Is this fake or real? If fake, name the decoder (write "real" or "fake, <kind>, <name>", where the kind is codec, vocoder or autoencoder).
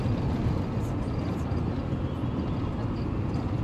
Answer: real